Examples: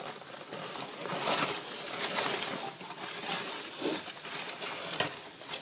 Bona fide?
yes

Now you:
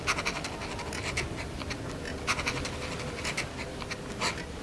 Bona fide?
yes